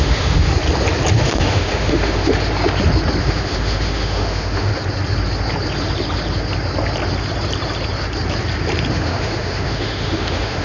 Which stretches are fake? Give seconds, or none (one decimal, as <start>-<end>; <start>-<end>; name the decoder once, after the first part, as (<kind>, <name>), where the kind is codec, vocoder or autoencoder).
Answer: 0.0-0.5 (autoencoder, DAC-VAE); 1.2-2.3; 3.2-4.7; 8.9-10.6